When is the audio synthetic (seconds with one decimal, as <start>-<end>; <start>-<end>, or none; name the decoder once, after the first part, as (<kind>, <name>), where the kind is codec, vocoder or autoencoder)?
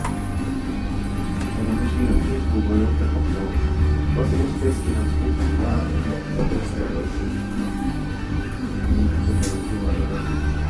5.7-9.2 (codec, SNAC)